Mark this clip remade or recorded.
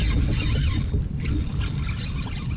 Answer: recorded